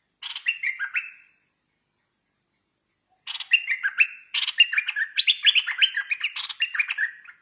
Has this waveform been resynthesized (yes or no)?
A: no